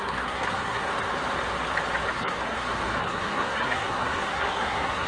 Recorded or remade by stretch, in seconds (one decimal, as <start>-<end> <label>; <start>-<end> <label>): 0.0-0.9 remade; 0.9-2.1 recorded; 2.1-5.1 remade